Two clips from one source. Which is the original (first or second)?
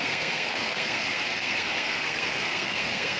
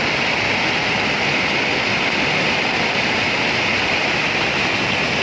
second